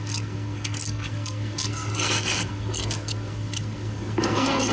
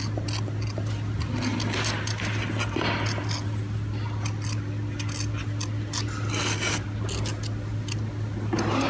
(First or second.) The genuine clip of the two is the second